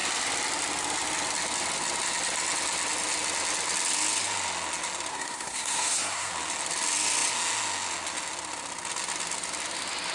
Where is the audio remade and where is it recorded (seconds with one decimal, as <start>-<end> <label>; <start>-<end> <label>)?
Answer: 0.0-5.1 recorded; 5.1-6.3 remade; 6.3-10.1 recorded